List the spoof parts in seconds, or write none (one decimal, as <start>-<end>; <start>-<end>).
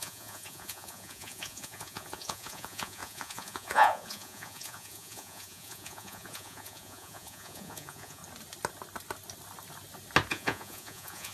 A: 0.0-8.2; 10.3-11.3